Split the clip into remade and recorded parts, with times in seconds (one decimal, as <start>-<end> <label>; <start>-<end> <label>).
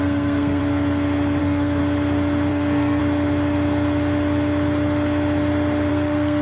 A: 0.0-0.6 remade; 0.6-1.4 recorded; 1.4-1.8 remade; 1.8-2.5 recorded; 2.5-3.0 remade; 3.0-5.9 recorded; 5.9-6.4 remade